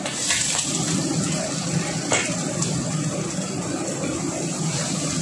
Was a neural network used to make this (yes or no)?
no